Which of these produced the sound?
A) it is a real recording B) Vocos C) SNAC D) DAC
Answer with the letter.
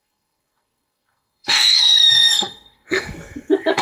C